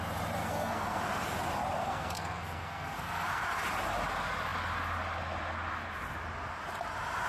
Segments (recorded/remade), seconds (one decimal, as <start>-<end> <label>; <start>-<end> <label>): 0.0-0.4 recorded; 0.4-1.0 remade; 1.0-1.8 recorded; 1.8-3.4 remade; 3.4-7.3 recorded